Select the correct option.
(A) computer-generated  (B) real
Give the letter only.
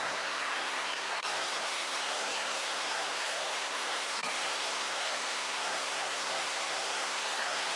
A